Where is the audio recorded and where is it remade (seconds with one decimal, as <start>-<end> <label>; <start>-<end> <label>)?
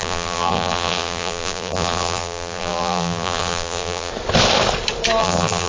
0.0-4.1 remade; 4.1-5.2 recorded; 5.2-5.7 remade